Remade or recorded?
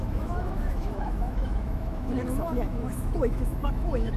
remade